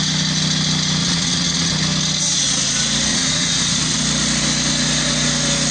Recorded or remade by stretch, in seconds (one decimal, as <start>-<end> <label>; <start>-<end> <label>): 0.0-1.0 recorded; 1.0-1.7 remade; 1.7-3.1 recorded; 3.1-4.0 remade; 4.0-5.7 recorded